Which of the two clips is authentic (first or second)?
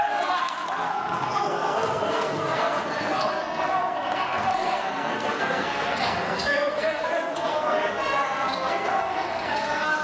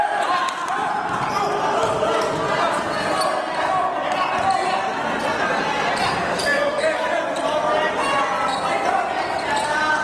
second